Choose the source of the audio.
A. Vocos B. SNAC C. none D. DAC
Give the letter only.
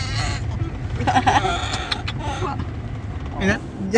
C